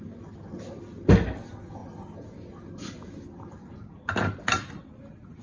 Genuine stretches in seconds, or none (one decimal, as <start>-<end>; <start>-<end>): 0.0-5.4